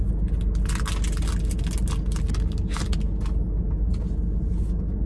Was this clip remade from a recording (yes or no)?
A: no